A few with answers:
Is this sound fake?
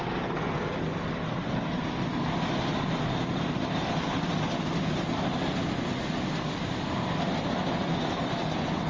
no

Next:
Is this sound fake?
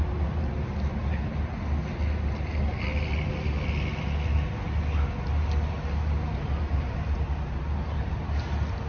no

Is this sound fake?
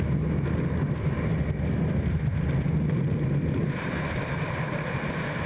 no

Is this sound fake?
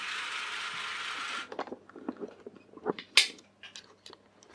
no